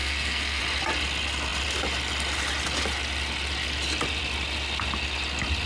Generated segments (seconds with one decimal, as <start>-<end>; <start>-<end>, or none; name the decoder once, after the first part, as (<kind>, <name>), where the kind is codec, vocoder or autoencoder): 0.0-0.6 (codec, SNAC)